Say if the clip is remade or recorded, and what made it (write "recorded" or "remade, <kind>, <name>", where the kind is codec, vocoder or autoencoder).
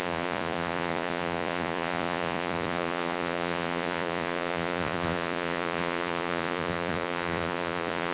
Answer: remade, vocoder, Vocos